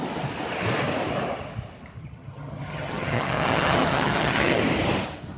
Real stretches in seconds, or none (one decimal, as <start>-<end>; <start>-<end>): 0.0-2.0; 4.6-5.4